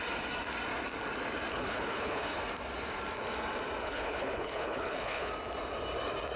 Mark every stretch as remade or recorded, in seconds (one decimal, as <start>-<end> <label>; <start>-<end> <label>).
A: 0.0-1.5 recorded; 1.5-2.4 remade; 2.4-3.8 recorded; 3.8-5.3 remade; 5.3-6.4 recorded